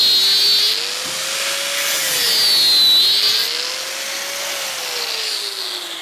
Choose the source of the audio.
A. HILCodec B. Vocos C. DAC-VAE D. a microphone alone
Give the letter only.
D